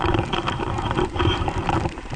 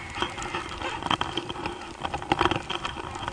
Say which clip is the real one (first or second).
second